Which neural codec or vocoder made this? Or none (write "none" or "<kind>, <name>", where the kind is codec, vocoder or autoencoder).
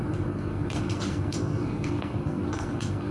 codec, SNAC